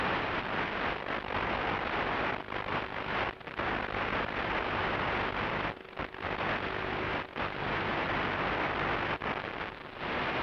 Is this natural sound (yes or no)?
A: yes